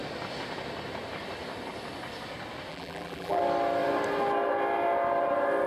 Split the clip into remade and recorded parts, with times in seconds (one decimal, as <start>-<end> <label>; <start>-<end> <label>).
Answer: 0.0-2.7 recorded; 2.7-3.4 remade; 3.4-5.7 recorded